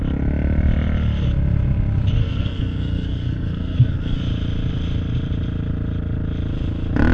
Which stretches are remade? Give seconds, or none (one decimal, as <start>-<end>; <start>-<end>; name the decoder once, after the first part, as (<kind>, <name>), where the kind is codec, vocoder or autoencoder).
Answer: 2.2-4.2 (codec, SNAC)